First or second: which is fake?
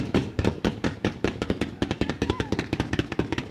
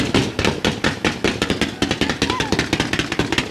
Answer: first